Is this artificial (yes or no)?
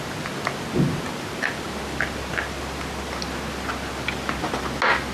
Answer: no